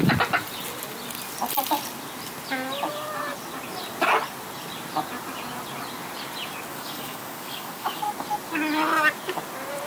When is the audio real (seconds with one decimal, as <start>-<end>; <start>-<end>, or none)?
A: 0.0-6.7; 8.0-9.9